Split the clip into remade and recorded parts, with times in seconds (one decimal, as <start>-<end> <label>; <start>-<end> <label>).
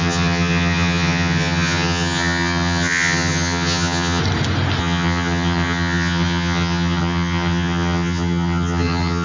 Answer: 0.0-4.2 remade; 4.2-4.8 recorded; 4.8-9.2 remade